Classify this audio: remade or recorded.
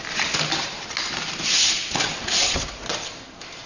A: recorded